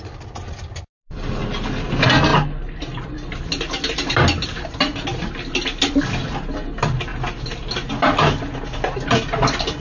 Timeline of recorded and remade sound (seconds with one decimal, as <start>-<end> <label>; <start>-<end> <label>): 0.0-9.8 recorded